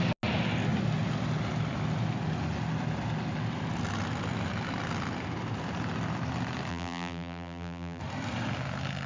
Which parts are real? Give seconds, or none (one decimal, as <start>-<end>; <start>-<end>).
0.0-6.7; 8.0-9.1